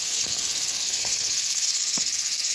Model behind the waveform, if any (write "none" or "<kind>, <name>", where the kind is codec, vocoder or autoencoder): codec, SNAC